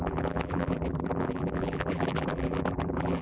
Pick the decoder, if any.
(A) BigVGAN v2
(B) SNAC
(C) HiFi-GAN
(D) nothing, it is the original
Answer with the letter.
A